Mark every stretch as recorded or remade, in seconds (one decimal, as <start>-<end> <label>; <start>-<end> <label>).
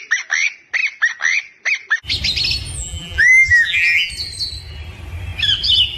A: 0.0-2.8 recorded; 2.8-4.1 remade; 4.1-6.0 recorded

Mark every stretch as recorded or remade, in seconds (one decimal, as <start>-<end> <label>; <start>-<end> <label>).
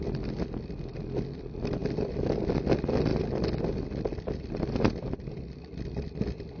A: 0.0-6.6 recorded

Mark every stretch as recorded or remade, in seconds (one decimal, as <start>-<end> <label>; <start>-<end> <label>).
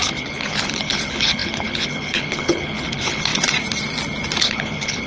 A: 0.0-3.3 remade; 3.3-4.4 recorded; 4.4-5.1 remade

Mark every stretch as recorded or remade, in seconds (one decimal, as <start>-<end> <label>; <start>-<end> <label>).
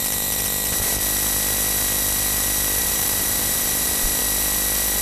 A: 0.0-0.9 remade; 0.9-2.8 recorded; 2.8-4.2 remade; 4.2-5.0 recorded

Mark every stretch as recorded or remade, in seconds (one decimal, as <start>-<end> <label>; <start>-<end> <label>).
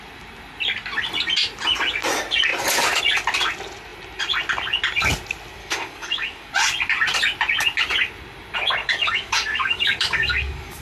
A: 0.0-5.6 recorded; 5.6-6.5 remade; 6.5-8.8 recorded; 8.8-10.8 remade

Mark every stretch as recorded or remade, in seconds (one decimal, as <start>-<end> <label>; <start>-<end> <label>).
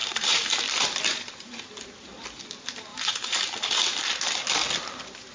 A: 0.0-0.6 remade; 0.6-1.1 recorded; 1.1-1.6 remade; 1.6-2.9 recorded; 2.9-3.6 remade; 3.6-5.3 recorded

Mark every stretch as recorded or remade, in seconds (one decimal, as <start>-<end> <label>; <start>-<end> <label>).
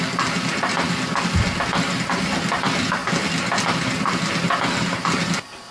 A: 0.0-5.7 recorded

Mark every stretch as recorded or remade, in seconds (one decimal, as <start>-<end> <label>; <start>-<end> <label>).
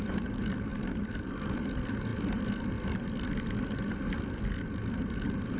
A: 0.0-5.6 recorded